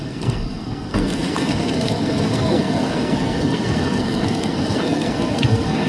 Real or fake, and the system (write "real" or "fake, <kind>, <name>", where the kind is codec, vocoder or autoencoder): fake, codec, SNAC